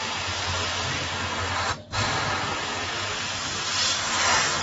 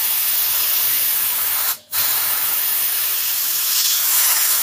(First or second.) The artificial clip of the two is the second